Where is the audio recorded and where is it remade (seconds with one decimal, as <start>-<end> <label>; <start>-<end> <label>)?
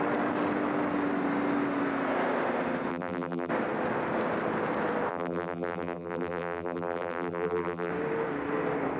0.0-2.9 recorded; 2.9-3.5 remade; 3.5-5.1 recorded; 5.1-7.9 remade; 7.9-9.0 recorded